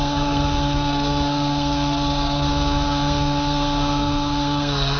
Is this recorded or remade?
remade